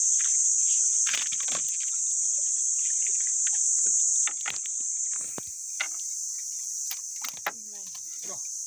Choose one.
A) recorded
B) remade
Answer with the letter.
A